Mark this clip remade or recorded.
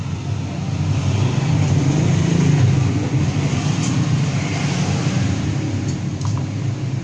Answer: recorded